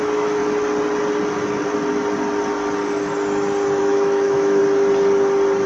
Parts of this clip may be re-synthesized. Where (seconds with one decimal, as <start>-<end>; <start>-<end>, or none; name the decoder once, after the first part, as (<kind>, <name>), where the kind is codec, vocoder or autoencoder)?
0.0-0.4 (autoencoder, DAC-VAE); 3.8-4.6